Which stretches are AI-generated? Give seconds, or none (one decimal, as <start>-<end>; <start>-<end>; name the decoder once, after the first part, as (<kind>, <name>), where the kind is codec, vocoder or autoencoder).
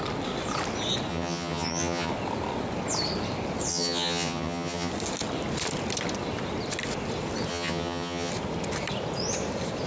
1.1-2.1 (vocoder, HiFi-GAN); 3.7-4.9; 7.5-8.3